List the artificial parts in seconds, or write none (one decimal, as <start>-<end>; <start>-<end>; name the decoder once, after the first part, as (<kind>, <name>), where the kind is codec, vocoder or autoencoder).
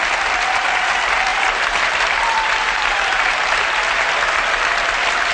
0.0-5.3 (vocoder, BigVGAN v2)